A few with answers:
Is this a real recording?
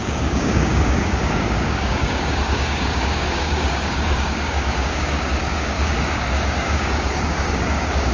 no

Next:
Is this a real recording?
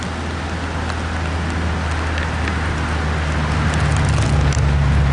yes